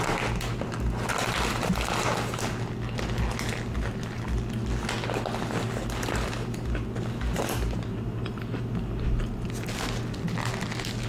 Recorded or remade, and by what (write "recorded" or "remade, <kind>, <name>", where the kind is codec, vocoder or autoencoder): recorded